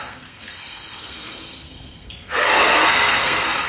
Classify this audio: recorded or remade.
remade